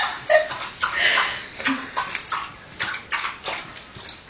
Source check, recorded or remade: recorded